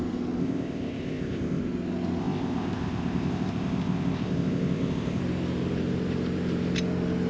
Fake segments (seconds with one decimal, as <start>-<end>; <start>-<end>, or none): 0.4-1.6; 2.2-5.2